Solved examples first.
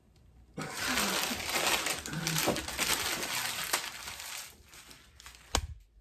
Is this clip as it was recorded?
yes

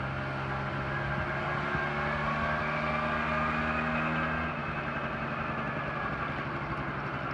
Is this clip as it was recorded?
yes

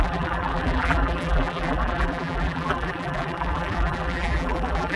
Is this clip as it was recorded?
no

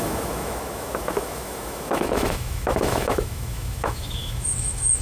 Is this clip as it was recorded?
no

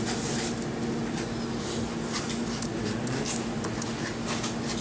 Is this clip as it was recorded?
yes